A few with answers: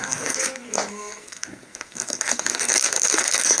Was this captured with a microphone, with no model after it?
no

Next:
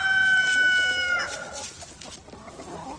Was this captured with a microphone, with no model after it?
yes